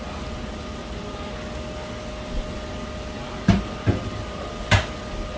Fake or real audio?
real